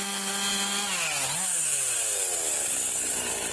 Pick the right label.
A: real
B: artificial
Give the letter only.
A